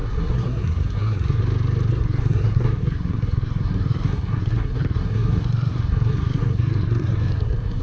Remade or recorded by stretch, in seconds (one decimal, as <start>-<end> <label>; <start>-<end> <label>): 0.0-1.4 remade; 1.4-1.9 recorded; 1.9-7.8 remade